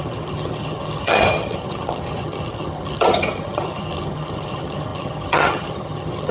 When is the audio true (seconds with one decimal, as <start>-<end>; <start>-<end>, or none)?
none